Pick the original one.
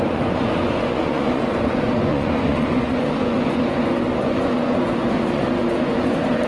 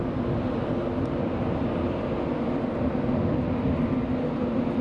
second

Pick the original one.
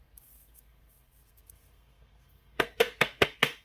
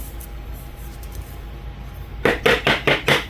second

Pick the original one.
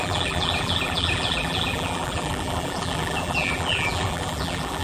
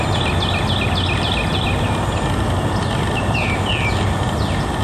second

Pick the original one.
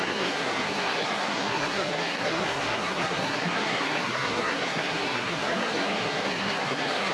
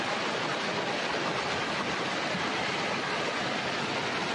second